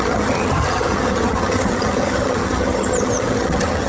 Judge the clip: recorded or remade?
remade